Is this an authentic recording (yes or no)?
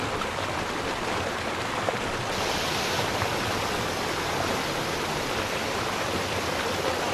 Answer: yes